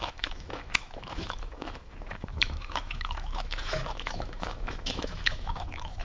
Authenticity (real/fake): fake